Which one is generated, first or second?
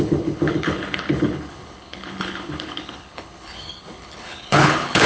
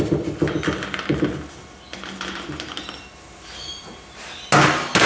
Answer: first